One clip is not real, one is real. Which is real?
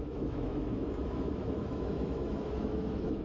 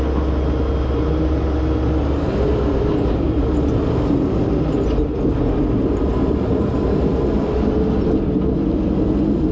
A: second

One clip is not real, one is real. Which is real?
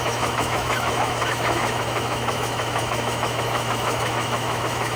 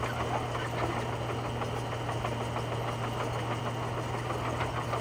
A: second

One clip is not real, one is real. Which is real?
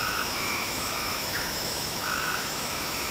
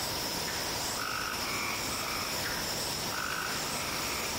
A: second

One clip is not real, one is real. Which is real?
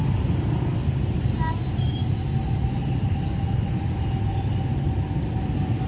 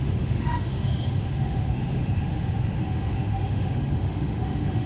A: first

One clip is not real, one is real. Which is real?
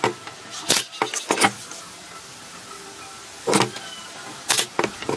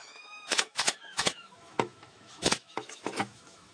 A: first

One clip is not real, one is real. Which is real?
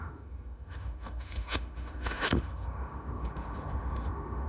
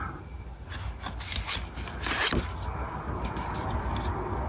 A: second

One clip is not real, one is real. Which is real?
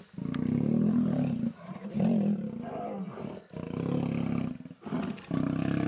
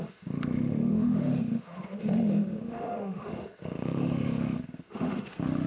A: first